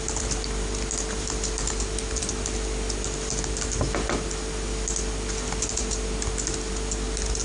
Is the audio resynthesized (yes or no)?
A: no